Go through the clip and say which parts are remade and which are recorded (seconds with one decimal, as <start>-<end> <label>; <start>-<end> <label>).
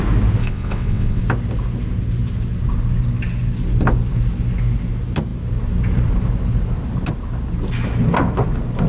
0.0-0.4 recorded; 0.4-1.2 remade; 1.2-8.9 recorded